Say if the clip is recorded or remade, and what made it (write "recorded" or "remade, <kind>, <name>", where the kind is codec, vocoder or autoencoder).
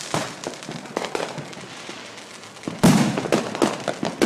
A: recorded